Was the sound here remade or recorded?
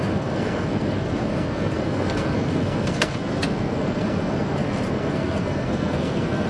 remade